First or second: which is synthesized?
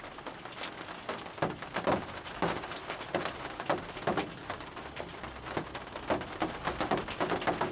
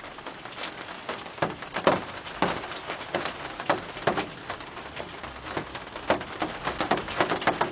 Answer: second